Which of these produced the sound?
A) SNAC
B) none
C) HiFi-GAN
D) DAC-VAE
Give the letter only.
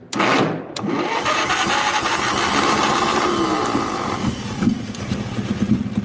B